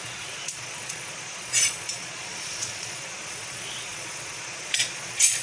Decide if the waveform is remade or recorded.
remade